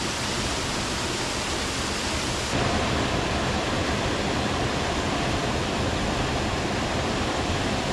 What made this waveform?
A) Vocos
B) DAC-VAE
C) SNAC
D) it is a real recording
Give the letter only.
D